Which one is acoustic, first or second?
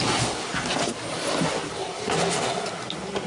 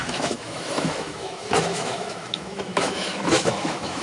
first